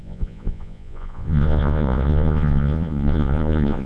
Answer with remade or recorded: remade